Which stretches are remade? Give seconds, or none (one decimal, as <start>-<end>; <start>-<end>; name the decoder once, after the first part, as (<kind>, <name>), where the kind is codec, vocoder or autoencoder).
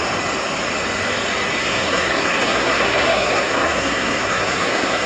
1.6-5.1 (codec, SNAC)